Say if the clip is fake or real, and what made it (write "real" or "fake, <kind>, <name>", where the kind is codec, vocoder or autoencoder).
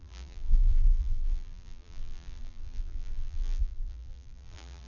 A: fake, vocoder, BigVGAN v2